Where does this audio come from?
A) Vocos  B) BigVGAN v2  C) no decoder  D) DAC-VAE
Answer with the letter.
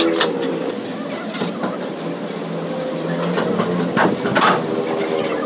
C